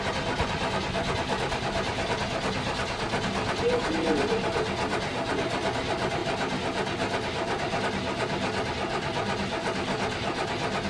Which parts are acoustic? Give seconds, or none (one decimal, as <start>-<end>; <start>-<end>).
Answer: 0.0-10.9